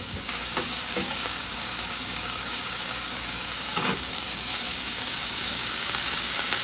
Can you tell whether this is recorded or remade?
remade